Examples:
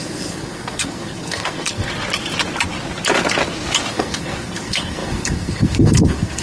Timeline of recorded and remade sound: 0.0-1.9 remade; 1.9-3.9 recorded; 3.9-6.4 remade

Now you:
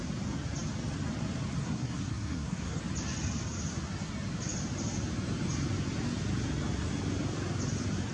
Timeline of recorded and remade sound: 0.0-1.6 recorded; 1.6-2.8 remade; 2.8-8.1 recorded

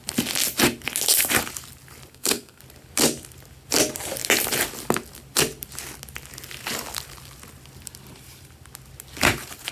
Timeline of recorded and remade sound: 0.0-2.1 recorded; 2.1-2.6 remade; 2.6-9.7 recorded

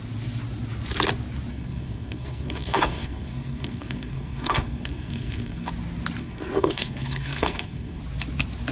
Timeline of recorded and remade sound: 0.0-1.5 recorded; 1.5-5.7 remade; 5.7-6.2 recorded; 6.2-8.0 remade; 8.0-8.7 recorded

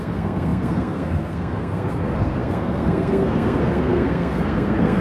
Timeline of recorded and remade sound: 0.0-5.0 remade

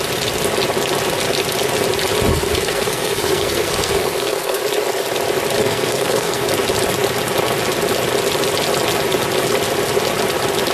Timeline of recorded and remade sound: 0.0-2.3 recorded; 2.3-4.6 remade; 4.6-5.6 recorded; 5.6-6.5 remade; 6.5-10.7 recorded

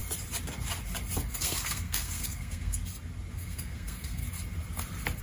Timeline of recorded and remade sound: 0.0-1.3 recorded; 1.3-2.8 remade; 2.8-3.3 recorded; 3.3-4.2 remade; 4.2-5.2 recorded

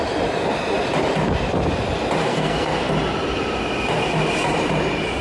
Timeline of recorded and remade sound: 0.0-2.2 recorded; 2.2-2.9 remade; 2.9-5.2 recorded